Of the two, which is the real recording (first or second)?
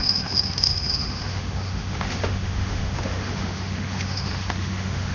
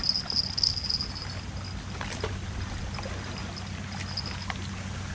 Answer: second